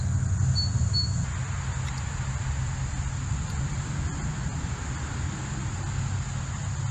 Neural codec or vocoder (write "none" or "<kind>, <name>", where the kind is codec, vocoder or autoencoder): none